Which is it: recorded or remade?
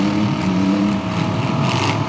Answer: recorded